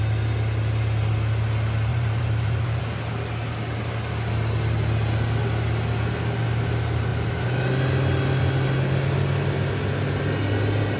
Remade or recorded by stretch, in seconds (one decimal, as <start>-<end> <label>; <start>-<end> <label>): 0.0-1.9 recorded; 1.9-2.8 remade; 2.8-11.0 recorded